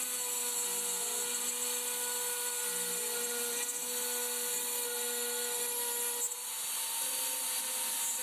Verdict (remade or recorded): recorded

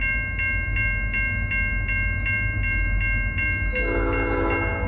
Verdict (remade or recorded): recorded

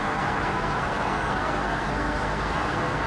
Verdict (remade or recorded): remade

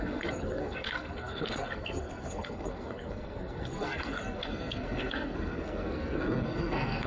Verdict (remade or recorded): remade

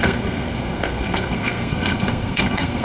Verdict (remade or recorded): remade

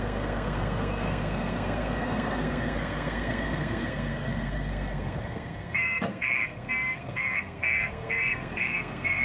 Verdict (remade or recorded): remade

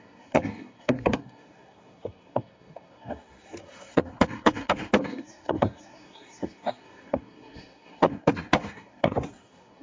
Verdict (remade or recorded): remade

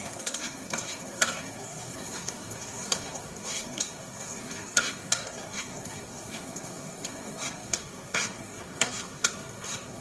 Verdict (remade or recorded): remade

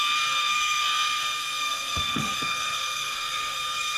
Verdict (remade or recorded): remade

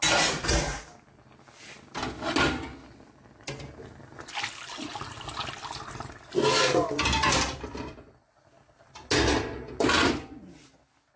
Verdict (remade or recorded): recorded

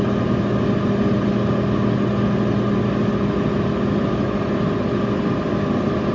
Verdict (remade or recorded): recorded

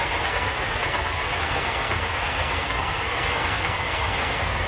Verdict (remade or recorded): remade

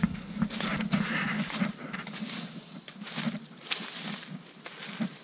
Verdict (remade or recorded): recorded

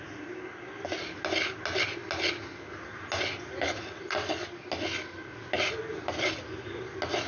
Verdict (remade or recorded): recorded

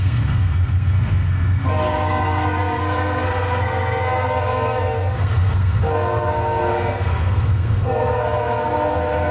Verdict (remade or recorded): remade